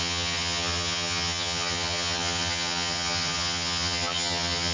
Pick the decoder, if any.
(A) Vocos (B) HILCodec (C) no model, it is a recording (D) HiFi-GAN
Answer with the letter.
D